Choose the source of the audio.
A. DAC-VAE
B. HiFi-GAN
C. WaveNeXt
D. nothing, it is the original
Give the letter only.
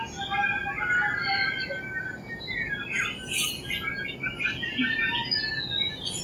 D